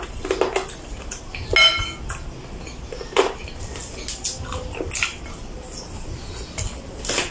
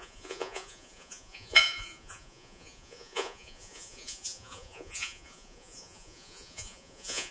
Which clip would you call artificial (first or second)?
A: second